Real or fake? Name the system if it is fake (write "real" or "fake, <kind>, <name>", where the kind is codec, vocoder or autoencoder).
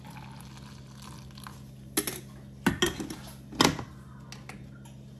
real